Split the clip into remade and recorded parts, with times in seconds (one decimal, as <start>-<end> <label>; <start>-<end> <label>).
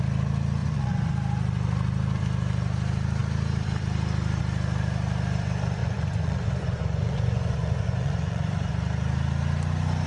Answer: 0.0-0.6 recorded; 0.6-1.1 remade; 1.1-5.8 recorded; 5.8-8.7 remade; 8.7-10.1 recorded